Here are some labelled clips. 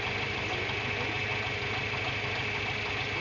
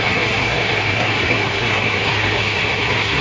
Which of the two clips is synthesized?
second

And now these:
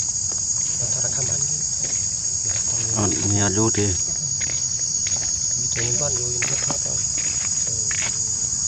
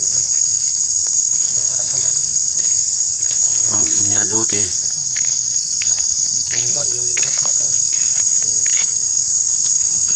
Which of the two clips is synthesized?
second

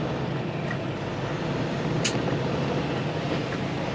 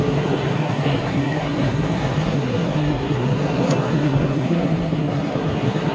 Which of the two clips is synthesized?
second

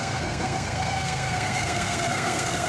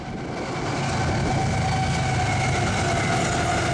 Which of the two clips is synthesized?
first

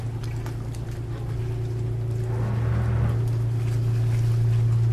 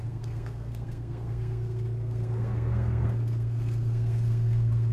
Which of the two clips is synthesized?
second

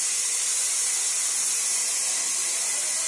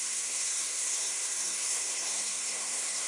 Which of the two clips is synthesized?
second